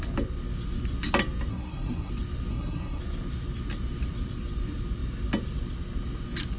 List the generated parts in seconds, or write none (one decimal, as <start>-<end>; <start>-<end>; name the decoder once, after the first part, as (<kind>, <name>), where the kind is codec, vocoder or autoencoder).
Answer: 1.5-2.1 (codec, SNAC); 2.5-3.0